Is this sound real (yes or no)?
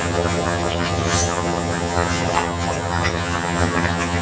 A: no